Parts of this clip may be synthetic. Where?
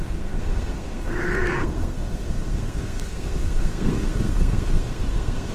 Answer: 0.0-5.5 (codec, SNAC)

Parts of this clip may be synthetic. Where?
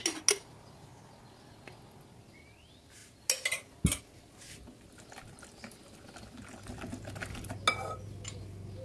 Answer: none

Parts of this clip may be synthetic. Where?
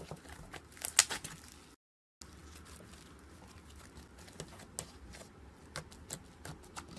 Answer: none